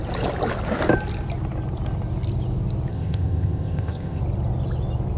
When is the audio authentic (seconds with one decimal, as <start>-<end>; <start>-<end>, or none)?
0.0-2.9; 4.2-5.2